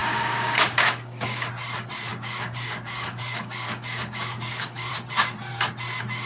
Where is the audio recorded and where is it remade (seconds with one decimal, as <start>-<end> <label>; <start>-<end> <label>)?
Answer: 0.0-1.5 remade; 1.5-2.1 recorded; 2.1-4.9 remade; 4.9-6.3 recorded